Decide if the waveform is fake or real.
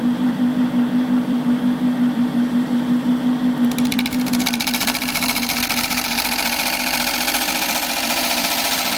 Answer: fake